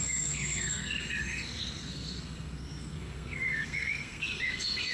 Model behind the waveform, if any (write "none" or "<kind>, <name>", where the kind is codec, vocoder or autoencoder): codec, SNAC